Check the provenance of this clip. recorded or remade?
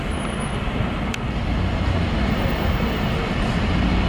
recorded